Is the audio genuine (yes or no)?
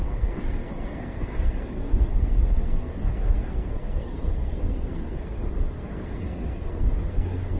no